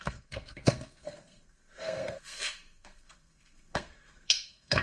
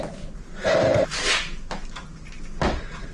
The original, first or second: second